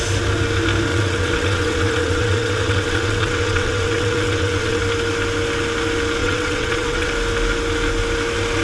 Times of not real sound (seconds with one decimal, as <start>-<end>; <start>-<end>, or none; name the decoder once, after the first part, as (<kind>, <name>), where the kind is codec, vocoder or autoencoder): 0.9-4.8 (vocoder, WaveNeXt); 6.2-7.1